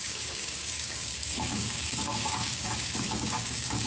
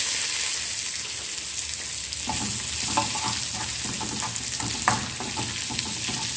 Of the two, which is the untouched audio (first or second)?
second